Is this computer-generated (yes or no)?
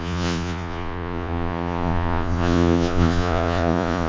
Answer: yes